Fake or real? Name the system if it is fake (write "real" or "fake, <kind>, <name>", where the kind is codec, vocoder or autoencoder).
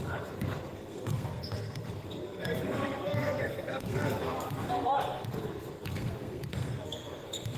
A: fake, codec, SNAC